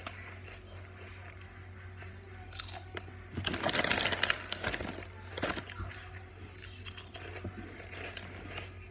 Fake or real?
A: real